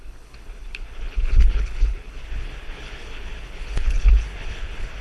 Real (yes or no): no